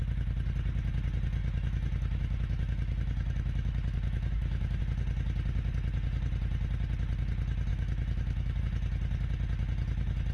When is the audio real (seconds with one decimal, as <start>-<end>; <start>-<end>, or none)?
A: 0.0-1.4; 4.8-7.7; 8.6-10.3